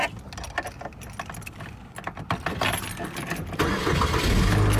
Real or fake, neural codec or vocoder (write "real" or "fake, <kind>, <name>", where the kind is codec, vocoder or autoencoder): real